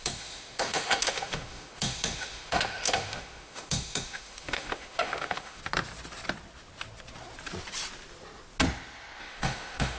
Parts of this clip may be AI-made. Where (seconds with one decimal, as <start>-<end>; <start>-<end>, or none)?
0.0-5.6; 9.2-10.0